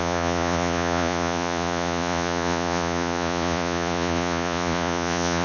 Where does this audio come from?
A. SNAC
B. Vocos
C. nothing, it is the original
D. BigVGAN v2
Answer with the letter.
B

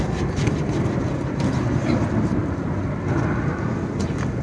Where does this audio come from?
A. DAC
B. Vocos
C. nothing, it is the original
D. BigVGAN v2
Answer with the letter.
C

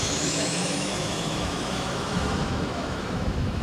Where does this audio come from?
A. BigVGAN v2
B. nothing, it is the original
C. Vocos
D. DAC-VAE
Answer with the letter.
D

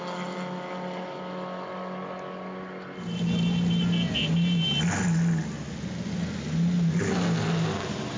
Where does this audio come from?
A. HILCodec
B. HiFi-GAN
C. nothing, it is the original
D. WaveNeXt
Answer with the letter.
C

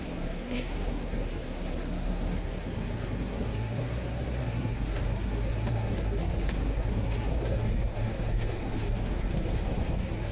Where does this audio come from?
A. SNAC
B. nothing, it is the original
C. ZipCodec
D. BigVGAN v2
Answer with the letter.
A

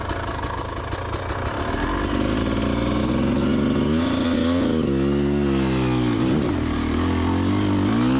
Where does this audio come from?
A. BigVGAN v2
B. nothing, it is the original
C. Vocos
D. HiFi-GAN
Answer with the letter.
B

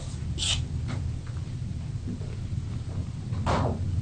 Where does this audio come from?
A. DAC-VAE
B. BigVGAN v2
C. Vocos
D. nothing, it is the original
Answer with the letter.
D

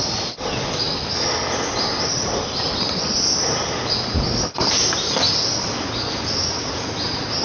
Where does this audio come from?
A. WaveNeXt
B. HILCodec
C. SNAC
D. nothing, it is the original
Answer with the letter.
D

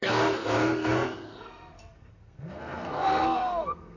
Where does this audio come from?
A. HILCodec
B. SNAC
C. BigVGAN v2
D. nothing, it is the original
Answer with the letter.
B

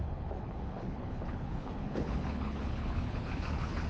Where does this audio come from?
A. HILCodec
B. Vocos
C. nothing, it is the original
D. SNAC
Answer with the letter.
A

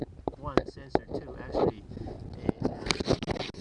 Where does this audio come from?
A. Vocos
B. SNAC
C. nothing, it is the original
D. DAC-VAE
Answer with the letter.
C